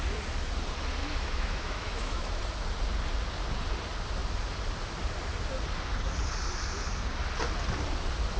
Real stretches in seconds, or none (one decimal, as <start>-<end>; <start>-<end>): 0.0-1.0; 2.4-8.4